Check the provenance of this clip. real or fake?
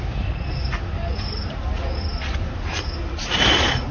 real